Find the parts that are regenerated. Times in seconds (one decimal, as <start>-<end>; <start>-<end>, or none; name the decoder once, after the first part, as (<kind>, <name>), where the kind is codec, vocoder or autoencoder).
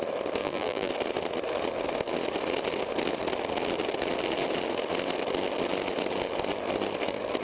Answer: 0.4-0.9 (vocoder, BigVGAN v2)